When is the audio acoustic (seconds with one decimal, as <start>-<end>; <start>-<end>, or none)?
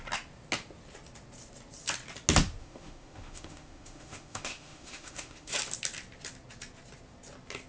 0.0-2.6; 5.5-7.7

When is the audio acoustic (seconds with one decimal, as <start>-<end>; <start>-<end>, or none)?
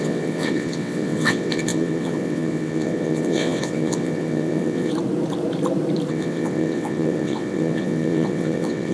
4.9-6.1